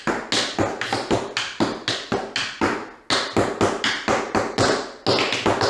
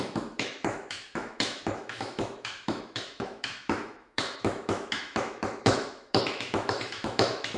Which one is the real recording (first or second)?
first